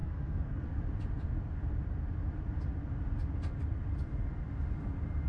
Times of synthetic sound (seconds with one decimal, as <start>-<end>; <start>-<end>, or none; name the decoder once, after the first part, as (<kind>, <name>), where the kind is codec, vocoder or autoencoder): 0.0-0.8 (codec, SNAC)